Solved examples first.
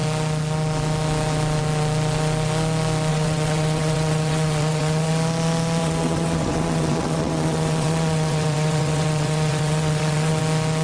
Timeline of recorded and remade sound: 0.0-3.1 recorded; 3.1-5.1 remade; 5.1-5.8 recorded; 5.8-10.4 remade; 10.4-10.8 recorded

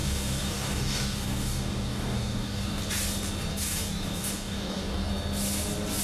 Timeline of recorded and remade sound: 0.0-2.8 remade; 2.8-3.5 recorded; 3.5-5.1 remade; 5.1-6.0 recorded

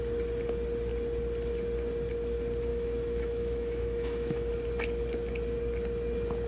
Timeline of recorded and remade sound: 0.0-2.7 recorded; 2.7-4.5 remade; 4.5-6.5 recorded

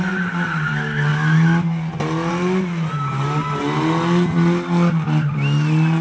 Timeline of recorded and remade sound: 0.0-6.0 recorded

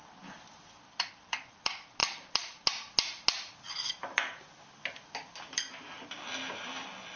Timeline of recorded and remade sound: 0.0-7.2 recorded

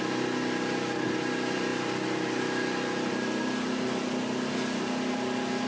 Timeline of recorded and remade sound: 0.0-5.7 recorded

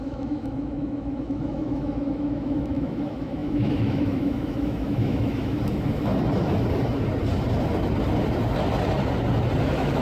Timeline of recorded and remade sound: 0.0-6.1 remade; 6.1-9.6 recorded; 9.6-10.0 remade

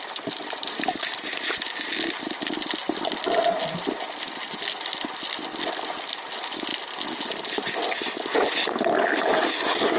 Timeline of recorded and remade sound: 0.0-10.0 recorded